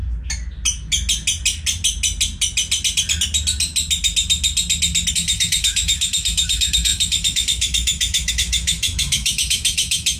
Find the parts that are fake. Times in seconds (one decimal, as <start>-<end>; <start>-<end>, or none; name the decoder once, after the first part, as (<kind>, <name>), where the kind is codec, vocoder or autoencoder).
5.1-10.2 (autoencoder, DAC-VAE)